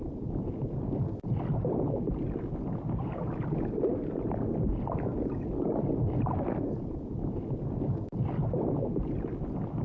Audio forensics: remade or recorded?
recorded